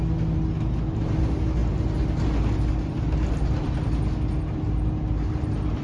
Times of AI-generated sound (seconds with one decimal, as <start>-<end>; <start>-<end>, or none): none